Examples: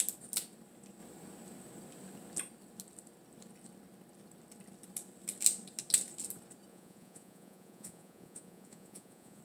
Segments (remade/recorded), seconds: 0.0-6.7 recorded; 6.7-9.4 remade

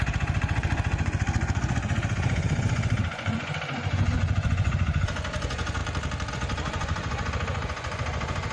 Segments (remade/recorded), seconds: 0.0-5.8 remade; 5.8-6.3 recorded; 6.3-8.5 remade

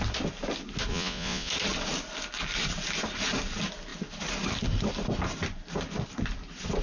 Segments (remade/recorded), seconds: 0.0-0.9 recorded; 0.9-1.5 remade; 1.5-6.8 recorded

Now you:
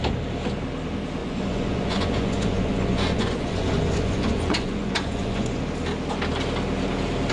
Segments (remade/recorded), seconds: 0.0-1.2 recorded; 1.2-5.6 remade; 5.6-7.3 recorded

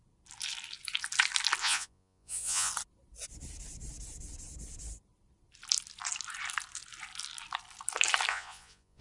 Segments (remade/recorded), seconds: 0.0-1.6 recorded; 1.6-2.7 remade; 2.7-8.3 recorded; 8.3-9.0 remade

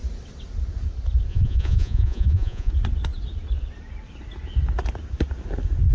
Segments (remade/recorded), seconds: 0.0-1.3 recorded; 1.3-2.7 remade; 2.7-5.9 recorded

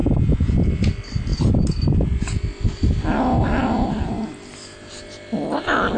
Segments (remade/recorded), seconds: 0.0-0.7 remade; 0.7-6.0 recorded

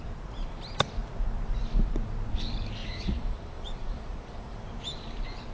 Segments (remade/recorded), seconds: 0.0-2.8 recorded; 2.8-4.6 remade; 4.6-5.5 recorded